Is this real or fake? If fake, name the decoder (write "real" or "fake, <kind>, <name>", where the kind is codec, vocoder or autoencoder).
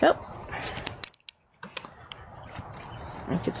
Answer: real